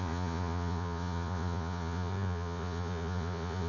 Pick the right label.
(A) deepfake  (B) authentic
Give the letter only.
A